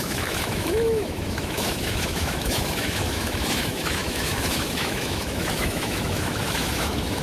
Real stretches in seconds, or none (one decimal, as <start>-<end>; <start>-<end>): none